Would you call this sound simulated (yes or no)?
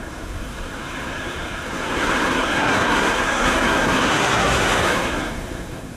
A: yes